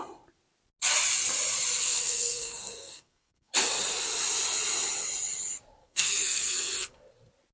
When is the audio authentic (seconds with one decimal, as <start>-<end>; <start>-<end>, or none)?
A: 0.0-1.8; 3.5-5.8; 7.0-7.5